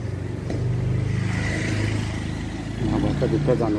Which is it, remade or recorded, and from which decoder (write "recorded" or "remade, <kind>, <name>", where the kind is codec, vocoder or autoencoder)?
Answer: recorded